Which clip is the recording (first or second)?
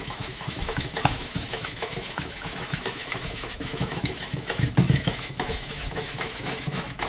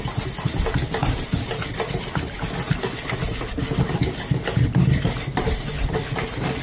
second